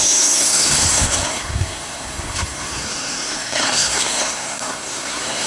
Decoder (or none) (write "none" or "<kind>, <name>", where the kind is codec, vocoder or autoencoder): codec, SNAC